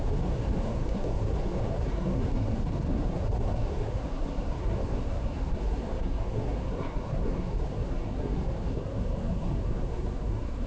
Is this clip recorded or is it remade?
remade